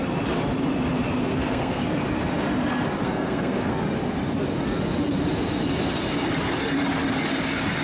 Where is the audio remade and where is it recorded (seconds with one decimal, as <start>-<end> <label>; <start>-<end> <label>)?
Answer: 0.0-1.2 recorded; 1.2-1.8 remade; 1.8-3.0 recorded; 3.0-3.7 remade; 3.7-7.8 recorded